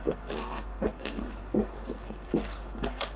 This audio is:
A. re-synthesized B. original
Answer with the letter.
A